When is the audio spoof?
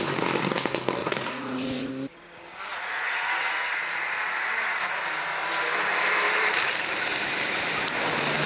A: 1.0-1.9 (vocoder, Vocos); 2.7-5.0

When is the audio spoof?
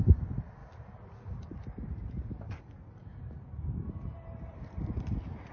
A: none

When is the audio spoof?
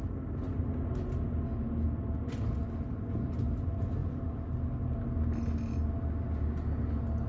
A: none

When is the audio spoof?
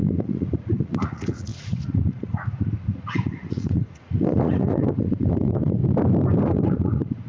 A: 0.0-5.8 (vocoder, Vocos); 6.4-7.3